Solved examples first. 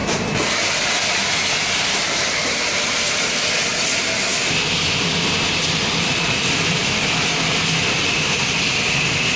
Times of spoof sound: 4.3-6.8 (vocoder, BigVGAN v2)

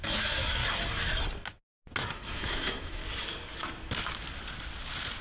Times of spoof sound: 0.0-0.6 (autoencoder, DAC-VAE); 2.1-3.0

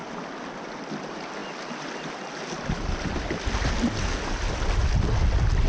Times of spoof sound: none